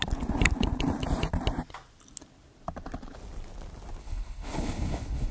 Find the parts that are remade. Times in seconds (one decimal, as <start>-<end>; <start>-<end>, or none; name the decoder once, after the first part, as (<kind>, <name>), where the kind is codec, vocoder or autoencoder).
4.0-5.3 (codec, HILCodec)